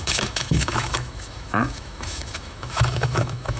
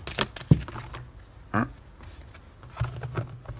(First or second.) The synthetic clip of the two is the first